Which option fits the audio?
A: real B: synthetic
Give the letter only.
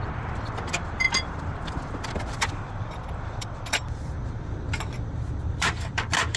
B